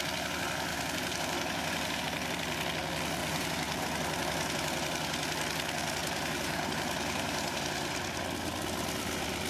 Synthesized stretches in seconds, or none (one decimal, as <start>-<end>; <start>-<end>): 0.7-2.0; 3.2-3.8; 6.0-7.6